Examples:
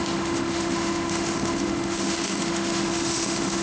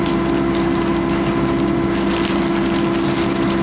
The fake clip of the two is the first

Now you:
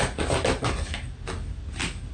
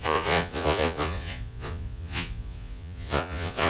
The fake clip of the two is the second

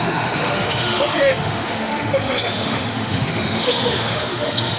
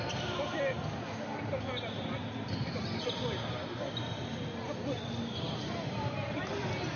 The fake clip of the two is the first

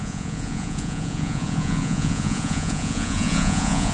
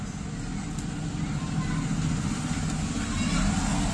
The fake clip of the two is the first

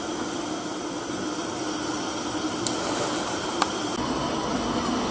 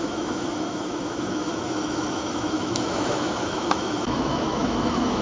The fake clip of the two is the second